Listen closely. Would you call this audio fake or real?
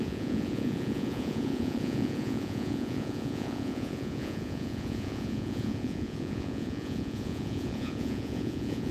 fake